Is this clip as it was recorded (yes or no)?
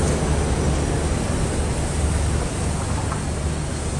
yes